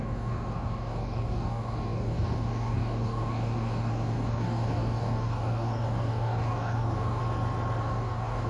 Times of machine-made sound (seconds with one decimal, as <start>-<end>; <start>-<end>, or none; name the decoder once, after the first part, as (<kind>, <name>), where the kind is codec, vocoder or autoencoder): 0.0-7.2 (codec, DAC); 7.8-8.5